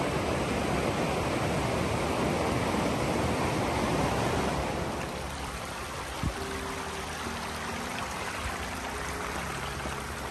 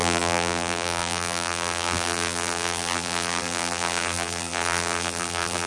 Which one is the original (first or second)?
first